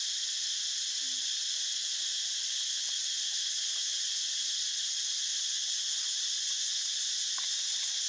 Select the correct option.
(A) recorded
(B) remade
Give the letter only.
A